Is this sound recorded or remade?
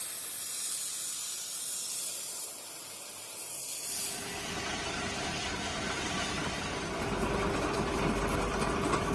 recorded